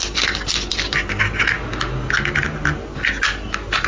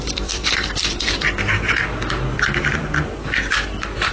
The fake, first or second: second